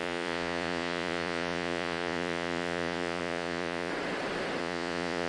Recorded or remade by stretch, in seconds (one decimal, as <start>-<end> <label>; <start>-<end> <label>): 0.0-3.9 remade; 3.9-4.6 recorded; 4.6-5.3 remade